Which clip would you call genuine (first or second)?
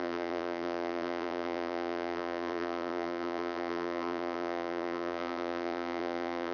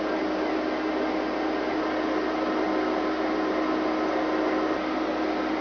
second